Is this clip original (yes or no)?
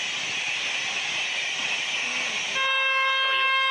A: yes